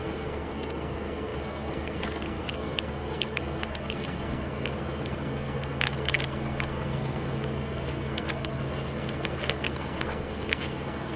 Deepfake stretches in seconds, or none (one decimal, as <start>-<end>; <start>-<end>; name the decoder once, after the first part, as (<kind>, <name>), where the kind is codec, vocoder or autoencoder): 0.0-11.2 (codec, SNAC)